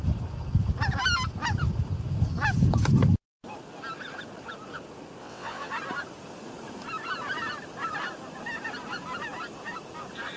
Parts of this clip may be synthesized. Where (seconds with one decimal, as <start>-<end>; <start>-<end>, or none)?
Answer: 5.2-5.7